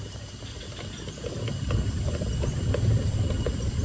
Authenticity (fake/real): real